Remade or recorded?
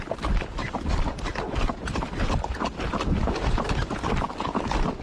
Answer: recorded